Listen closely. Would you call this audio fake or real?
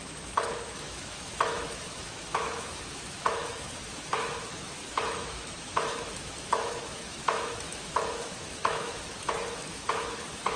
fake